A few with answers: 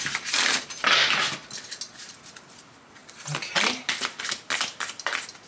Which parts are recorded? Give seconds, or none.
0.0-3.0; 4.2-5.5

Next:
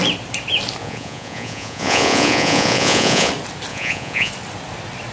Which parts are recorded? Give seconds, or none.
0.0-0.8; 3.3-3.7; 4.3-5.1

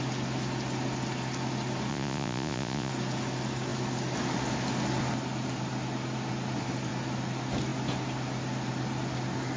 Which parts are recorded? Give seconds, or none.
0.0-1.9; 2.9-9.6

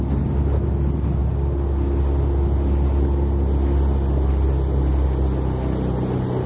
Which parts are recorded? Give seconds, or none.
0.0-6.5

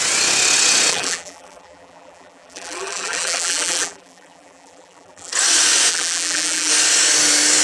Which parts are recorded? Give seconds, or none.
0.0-0.9; 5.3-5.9; 6.7-7.6

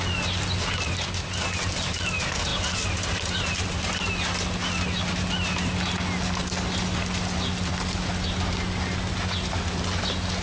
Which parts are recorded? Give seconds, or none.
0.0-10.4

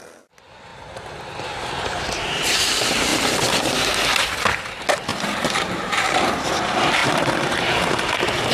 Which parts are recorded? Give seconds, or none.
0.0-5.1; 6.5-7.0

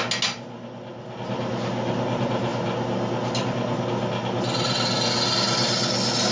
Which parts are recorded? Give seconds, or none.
0.0-6.3